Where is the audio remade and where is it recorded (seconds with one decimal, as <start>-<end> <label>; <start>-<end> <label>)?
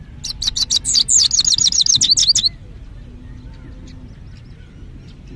0.0-5.4 recorded